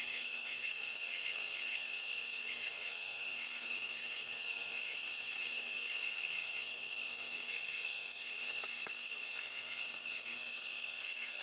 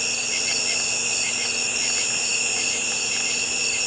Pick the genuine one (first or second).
second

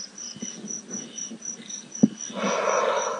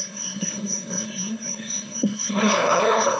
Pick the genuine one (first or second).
first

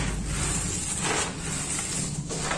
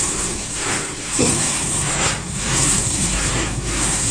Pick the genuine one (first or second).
first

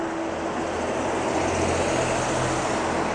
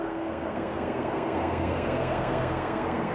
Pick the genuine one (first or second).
first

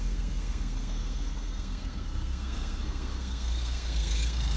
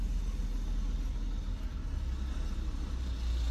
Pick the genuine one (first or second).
second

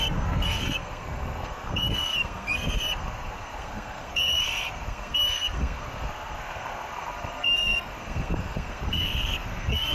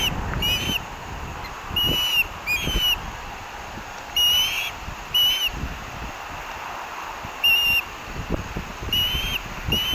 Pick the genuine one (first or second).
second